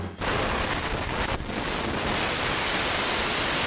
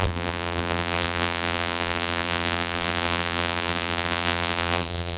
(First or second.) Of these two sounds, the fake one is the second